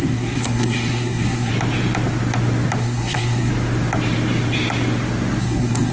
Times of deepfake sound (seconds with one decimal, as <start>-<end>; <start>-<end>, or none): 0.0-1.5; 2.8-3.5; 5.4-5.9